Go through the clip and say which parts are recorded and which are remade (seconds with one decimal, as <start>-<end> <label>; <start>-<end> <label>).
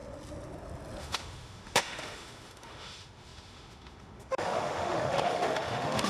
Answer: 0.0-1.0 recorded; 1.0-6.1 remade